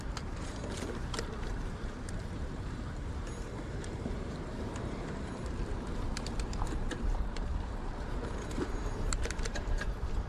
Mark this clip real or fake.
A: fake